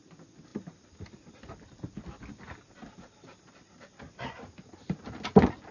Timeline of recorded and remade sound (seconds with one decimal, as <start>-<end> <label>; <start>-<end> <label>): 0.0-5.7 recorded